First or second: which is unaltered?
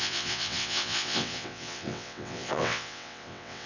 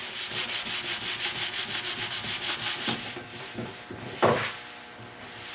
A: second